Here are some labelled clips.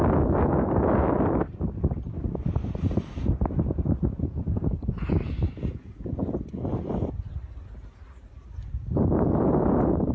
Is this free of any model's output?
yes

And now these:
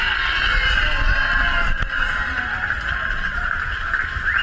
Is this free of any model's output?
yes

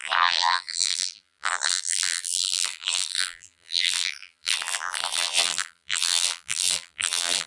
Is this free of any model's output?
no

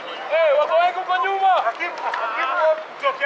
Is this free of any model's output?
yes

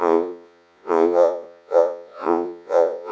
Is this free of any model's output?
no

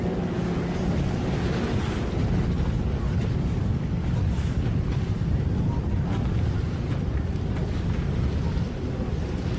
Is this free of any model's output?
yes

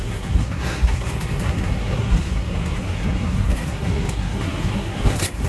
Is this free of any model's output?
no